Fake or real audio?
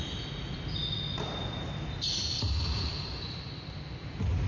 real